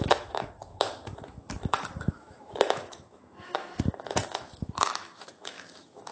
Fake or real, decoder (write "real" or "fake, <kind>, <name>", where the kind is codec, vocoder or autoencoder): fake, autoencoder, DAC-VAE